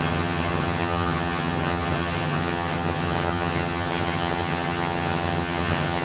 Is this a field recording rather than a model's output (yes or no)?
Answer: no